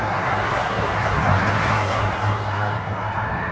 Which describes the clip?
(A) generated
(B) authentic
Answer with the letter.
A